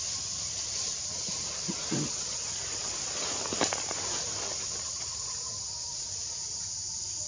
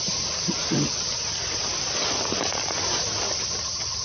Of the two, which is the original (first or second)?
first